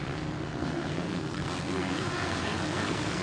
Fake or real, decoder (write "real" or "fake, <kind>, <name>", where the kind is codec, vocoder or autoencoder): fake, codec, SNAC